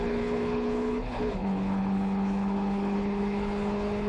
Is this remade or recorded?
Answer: remade